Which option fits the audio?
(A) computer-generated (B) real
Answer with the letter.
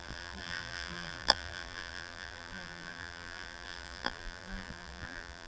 A